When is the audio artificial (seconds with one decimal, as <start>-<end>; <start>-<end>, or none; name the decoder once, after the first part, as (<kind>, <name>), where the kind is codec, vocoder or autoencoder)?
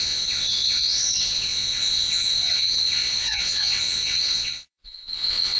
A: 0.0-5.6 (vocoder, WaveNeXt)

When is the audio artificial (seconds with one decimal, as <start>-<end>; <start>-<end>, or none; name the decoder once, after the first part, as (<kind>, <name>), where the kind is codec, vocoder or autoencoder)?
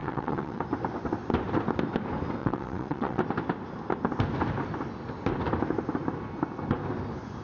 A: 0.0-0.6 (vocoder, WaveNeXt); 2.4-3.2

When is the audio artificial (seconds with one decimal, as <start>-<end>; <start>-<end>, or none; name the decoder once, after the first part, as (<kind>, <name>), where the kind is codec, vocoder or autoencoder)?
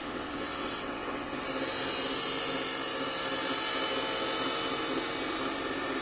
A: 0.0-1.4 (vocoder, WaveNeXt)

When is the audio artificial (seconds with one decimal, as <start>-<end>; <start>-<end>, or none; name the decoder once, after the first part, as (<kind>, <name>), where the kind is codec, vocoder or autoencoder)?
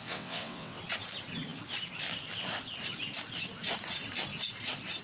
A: 0.0-0.8 (vocoder, WaveNeXt)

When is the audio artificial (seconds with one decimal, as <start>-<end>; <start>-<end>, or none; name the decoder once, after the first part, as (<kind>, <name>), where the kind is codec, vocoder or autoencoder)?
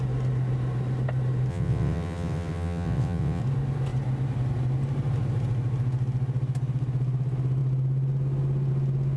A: 1.5-3.4 (vocoder, WaveNeXt)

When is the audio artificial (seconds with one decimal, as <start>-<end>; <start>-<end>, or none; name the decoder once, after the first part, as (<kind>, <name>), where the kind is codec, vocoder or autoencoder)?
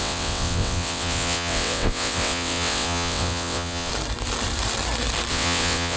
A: 0.0-3.9 (vocoder, WaveNeXt); 5.3-6.0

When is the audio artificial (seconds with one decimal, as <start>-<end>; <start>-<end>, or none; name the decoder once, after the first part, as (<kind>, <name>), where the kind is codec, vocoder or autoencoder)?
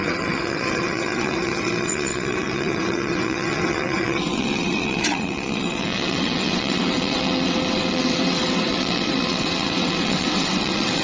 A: 0.0-11.0 (vocoder, WaveNeXt)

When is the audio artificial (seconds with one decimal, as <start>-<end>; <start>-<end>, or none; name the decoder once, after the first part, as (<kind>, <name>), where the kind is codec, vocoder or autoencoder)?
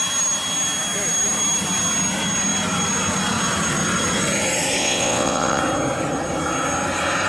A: 4.8-5.6 (vocoder, WaveNeXt)